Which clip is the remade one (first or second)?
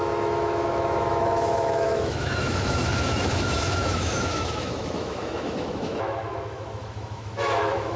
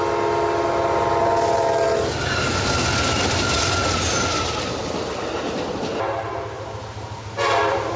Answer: first